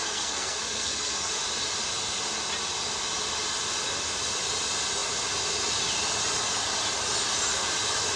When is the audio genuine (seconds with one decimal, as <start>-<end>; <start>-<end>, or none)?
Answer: 1.3-8.2